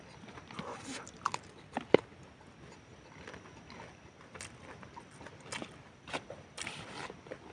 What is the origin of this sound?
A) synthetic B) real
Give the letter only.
B